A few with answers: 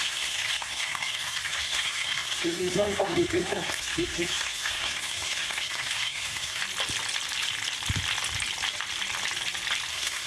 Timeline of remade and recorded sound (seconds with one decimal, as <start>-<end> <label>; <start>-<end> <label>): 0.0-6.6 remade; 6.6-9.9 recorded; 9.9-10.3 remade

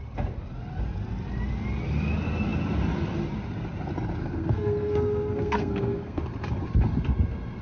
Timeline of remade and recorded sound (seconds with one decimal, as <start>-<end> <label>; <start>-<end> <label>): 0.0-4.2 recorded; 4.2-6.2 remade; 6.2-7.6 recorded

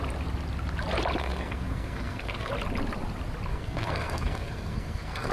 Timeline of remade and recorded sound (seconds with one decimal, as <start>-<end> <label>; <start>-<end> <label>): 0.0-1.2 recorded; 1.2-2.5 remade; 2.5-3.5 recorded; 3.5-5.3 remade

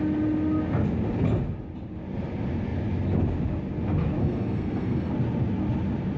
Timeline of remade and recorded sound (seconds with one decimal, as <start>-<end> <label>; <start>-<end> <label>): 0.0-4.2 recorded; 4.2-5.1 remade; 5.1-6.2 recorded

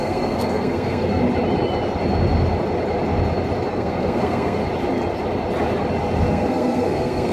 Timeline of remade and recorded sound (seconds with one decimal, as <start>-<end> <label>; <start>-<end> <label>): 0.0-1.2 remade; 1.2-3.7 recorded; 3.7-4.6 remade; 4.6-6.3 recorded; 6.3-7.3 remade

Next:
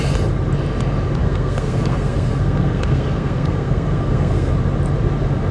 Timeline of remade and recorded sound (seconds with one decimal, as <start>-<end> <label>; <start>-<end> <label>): 0.0-1.2 recorded; 1.2-4.5 remade; 4.5-5.5 recorded

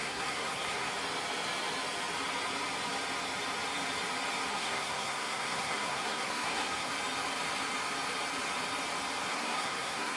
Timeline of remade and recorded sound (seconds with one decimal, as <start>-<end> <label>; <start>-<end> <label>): 0.0-0.9 remade; 0.9-4.5 recorded; 4.5-6.9 remade; 6.9-9.3 recorded; 9.3-10.2 remade